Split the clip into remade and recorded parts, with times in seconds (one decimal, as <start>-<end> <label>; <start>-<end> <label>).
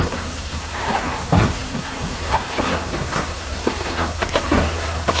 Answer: 0.0-5.2 remade